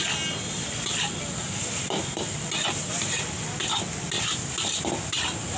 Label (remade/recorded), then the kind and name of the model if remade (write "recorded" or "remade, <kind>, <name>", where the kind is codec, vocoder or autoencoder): recorded